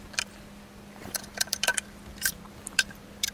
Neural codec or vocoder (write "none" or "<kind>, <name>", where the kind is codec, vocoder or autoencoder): vocoder, BigVGAN v2